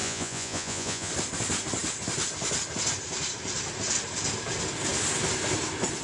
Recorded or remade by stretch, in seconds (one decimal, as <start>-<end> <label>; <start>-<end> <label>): 0.0-1.1 remade; 1.1-6.0 recorded